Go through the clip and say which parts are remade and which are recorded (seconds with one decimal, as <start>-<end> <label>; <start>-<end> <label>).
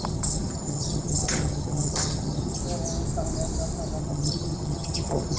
0.0-2.6 remade; 2.6-4.0 recorded; 4.0-5.4 remade